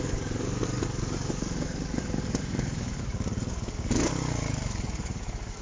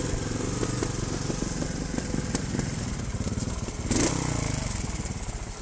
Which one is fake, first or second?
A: first